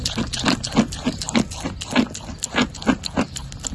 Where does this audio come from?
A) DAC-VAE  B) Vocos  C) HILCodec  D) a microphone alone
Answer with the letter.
D